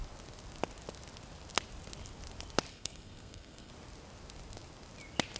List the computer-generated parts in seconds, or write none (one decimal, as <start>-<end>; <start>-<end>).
2.7-3.7